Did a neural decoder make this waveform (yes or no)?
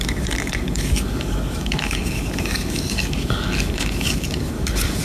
yes